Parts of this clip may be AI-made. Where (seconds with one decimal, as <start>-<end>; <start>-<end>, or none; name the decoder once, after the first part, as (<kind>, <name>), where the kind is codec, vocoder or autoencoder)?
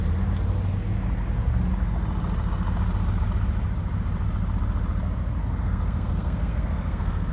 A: 5.4-7.3 (codec, SNAC)